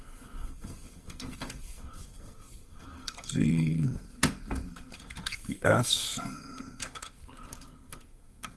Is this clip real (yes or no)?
no